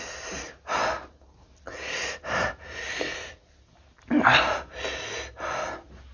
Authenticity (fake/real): real